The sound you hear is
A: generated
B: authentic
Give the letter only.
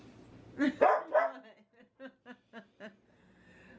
B